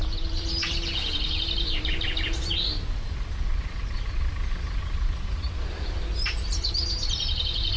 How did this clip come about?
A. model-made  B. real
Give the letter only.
A